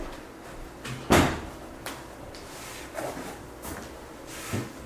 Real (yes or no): yes